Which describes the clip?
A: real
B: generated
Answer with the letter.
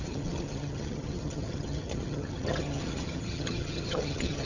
B